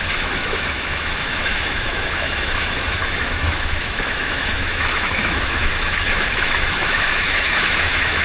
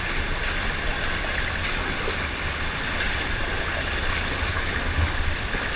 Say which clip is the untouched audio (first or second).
second